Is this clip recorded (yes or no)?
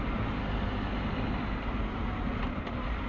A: yes